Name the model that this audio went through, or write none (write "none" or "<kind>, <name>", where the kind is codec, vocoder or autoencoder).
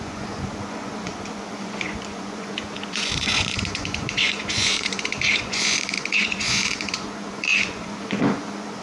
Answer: vocoder, Vocos